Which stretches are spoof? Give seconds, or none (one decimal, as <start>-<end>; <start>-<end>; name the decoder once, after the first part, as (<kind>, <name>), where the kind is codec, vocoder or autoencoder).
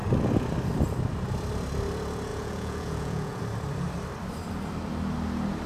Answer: 2.3-3.4 (vocoder, Vocos)